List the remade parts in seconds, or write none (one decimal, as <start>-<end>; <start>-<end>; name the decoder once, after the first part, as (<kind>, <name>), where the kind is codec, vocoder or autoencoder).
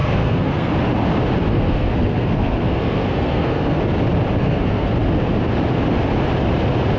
0.0-0.7 (codec, SNAC); 1.5-3.8; 4.4-4.9